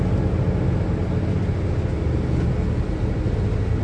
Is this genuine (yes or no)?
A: yes